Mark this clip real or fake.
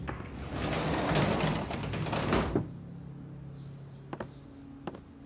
real